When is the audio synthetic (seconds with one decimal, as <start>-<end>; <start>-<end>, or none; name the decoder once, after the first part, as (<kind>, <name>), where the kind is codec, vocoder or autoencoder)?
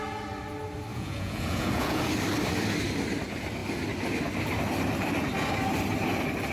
0.9-2.0 (vocoder, Vocos)